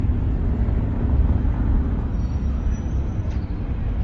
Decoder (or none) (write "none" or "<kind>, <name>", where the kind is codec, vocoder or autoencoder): none